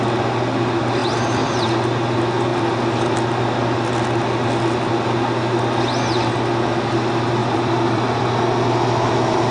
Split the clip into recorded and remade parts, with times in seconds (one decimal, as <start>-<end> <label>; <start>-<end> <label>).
0.0-1.0 recorded; 1.0-2.0 remade; 2.0-7.4 recorded; 7.4-8.2 remade; 8.2-9.5 recorded